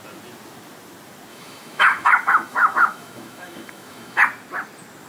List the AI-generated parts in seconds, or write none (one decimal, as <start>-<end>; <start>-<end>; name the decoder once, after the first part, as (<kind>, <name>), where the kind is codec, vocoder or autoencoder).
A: 1.3-4.2 (autoencoder, DAC-VAE)

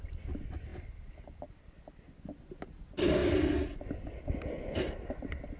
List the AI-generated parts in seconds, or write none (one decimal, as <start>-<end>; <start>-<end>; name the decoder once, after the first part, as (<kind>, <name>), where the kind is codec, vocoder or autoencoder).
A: none

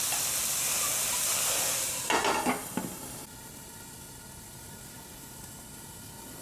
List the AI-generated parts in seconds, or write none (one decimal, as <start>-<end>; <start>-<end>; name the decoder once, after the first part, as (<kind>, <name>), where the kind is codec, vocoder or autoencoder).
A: none